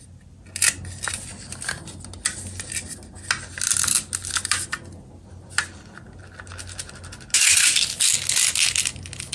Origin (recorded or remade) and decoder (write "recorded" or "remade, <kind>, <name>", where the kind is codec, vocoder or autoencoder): recorded